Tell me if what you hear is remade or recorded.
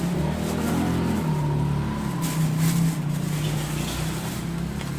recorded